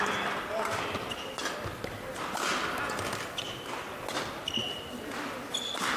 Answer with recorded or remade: recorded